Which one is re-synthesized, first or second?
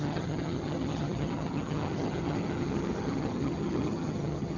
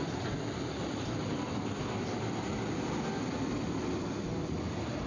first